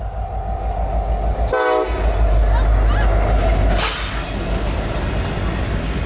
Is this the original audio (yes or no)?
yes